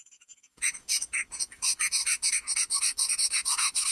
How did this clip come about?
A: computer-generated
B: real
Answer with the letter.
A